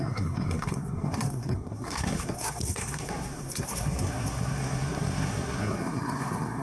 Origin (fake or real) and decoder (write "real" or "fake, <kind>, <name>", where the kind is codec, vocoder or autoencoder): fake, codec, SNAC